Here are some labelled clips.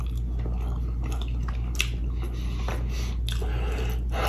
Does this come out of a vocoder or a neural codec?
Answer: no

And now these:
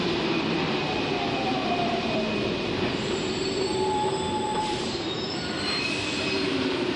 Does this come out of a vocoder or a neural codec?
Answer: yes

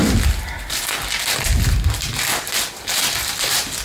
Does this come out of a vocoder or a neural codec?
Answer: yes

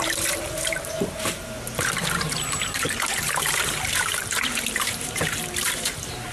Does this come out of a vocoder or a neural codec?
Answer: yes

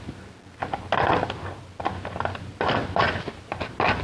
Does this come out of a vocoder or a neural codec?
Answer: no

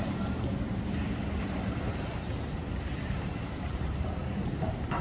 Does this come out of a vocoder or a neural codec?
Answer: yes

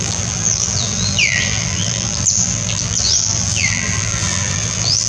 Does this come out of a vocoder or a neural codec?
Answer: yes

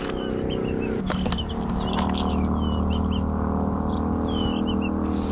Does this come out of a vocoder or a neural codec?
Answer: no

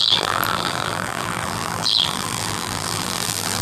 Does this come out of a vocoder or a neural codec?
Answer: yes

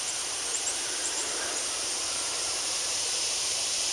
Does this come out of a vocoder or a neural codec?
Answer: yes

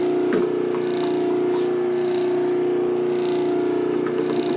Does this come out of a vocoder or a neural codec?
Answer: no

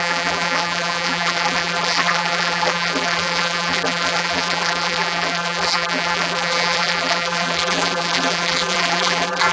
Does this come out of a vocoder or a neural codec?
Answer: yes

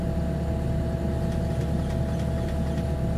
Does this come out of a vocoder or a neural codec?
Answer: no